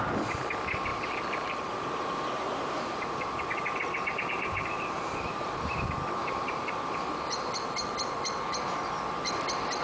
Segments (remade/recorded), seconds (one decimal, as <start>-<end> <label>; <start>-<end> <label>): 0.0-0.9 recorded; 0.9-5.8 remade; 5.8-6.2 recorded; 6.2-6.9 remade; 6.9-9.8 recorded